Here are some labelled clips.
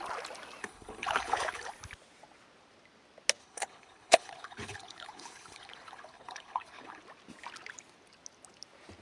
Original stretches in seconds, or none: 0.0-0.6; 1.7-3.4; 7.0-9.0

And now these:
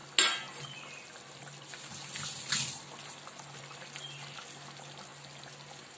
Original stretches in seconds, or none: 0.0-6.0

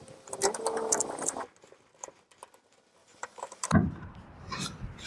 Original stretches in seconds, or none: 0.0-3.0; 3.7-5.1

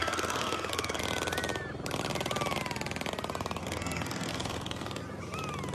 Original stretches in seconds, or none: 1.0-3.6; 5.0-5.7

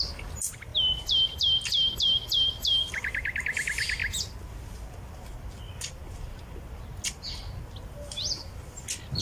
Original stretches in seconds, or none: 0.0-9.2

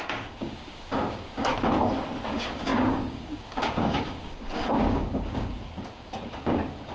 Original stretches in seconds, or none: 1.5-2.3